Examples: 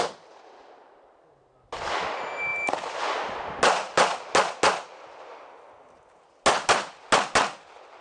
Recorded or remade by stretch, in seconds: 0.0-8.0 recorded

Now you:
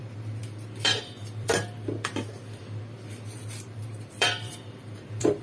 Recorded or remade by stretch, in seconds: 0.0-5.4 remade

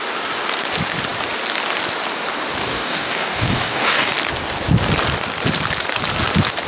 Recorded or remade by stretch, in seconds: 0.0-2.6 recorded; 2.6-4.1 remade; 4.1-6.7 recorded

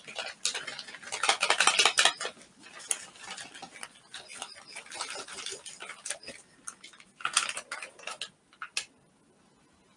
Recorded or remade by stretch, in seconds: 0.0-10.0 recorded

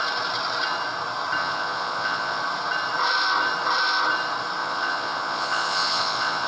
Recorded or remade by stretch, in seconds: 0.0-1.4 recorded; 1.4-2.4 remade; 2.4-4.6 recorded; 4.6-6.5 remade